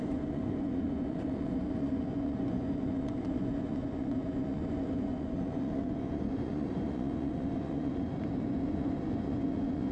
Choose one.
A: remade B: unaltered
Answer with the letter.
A